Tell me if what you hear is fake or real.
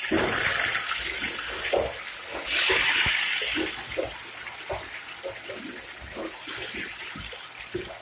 real